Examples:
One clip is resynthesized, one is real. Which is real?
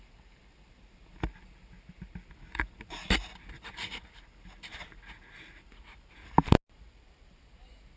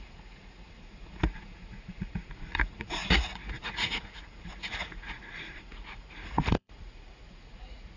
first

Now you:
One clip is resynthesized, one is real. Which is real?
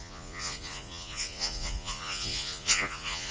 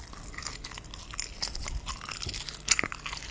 second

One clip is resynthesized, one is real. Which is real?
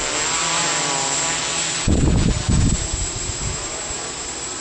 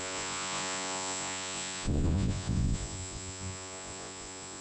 first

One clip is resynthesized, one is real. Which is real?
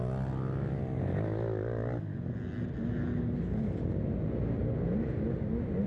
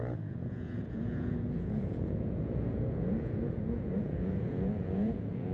first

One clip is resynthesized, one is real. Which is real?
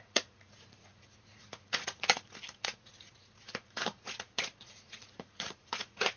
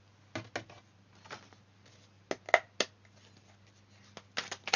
second